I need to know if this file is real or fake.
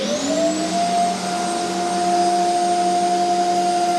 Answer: real